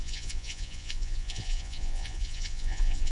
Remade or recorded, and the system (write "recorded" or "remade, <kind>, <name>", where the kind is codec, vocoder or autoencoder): remade, vocoder, Vocos